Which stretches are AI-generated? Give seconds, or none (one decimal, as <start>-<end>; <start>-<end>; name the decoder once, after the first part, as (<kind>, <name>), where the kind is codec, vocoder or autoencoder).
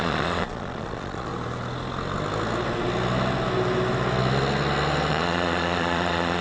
0.0-1.3 (vocoder, Vocos); 5.1-6.4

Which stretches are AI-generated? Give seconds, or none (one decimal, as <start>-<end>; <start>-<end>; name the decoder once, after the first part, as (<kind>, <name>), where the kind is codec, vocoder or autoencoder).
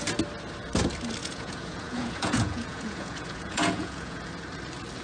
1.2-4.2 (vocoder, Vocos)